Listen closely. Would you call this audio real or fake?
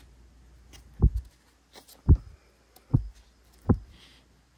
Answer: real